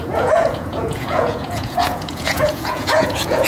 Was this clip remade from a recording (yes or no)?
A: yes